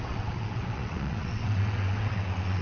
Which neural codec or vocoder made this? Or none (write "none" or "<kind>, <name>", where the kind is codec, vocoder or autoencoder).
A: vocoder, WaveNeXt